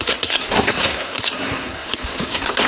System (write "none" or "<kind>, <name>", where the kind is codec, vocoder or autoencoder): codec, SNAC